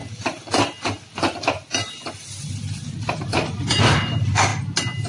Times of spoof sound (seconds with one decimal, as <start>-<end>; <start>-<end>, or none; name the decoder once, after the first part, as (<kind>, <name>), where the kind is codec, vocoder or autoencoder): 3.1-4.5 (vocoder, BigVGAN v2)